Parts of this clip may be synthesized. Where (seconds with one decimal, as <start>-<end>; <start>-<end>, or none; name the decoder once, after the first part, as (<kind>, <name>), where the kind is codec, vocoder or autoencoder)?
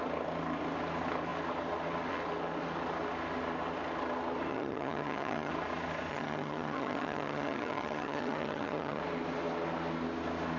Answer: 4.5-5.5 (vocoder, HiFi-GAN); 6.1-9.0